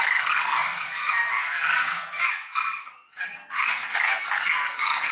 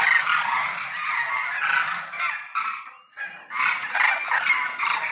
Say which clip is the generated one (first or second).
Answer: first